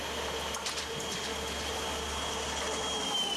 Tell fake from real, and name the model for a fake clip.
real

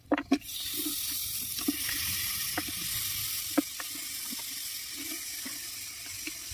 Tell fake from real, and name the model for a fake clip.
real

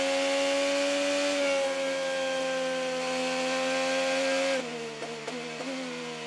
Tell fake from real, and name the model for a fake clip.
real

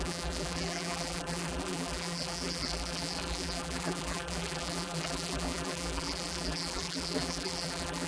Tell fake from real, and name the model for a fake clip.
fake, vocoder, BigVGAN v2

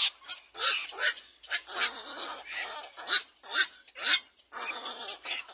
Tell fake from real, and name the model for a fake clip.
real